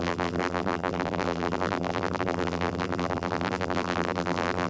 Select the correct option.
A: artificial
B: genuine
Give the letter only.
A